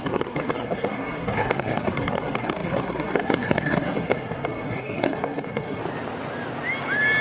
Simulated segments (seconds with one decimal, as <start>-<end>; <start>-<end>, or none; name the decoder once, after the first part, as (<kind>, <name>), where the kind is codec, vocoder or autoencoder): 0.0-5.8 (codec, SNAC)